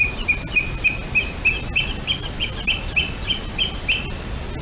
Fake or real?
real